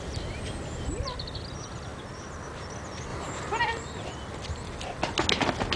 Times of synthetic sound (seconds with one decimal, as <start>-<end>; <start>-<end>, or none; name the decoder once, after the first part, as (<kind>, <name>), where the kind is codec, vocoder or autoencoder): 3.1-3.6 (vocoder, BigVGAN v2)